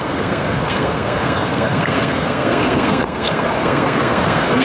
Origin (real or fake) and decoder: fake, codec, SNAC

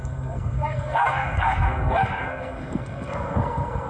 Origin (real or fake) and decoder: fake, codec, SNAC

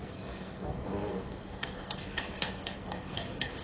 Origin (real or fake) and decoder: fake, codec, SNAC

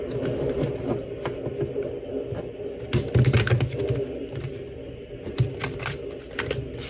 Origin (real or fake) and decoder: real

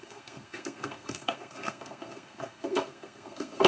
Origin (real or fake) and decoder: fake, codec, SNAC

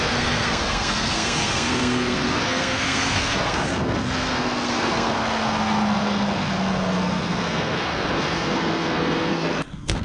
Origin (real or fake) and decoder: fake, codec, SNAC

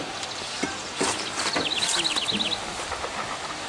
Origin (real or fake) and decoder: real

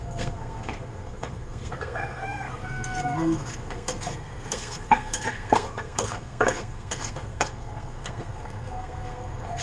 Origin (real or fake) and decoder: fake, codec, SNAC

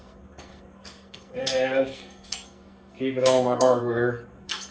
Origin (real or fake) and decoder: fake, codec, SNAC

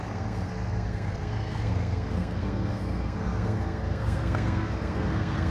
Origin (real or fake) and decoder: fake, codec, SNAC